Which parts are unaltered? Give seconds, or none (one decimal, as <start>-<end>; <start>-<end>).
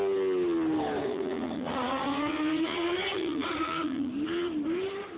0.0-1.0; 4.1-5.2